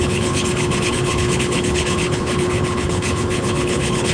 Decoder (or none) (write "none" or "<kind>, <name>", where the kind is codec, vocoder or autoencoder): codec, HILCodec